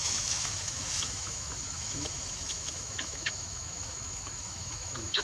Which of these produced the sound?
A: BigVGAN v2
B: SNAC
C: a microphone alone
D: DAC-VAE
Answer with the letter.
D